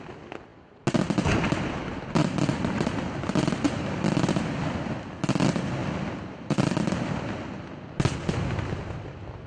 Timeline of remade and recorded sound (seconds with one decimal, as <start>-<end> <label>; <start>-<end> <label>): 0.0-9.5 recorded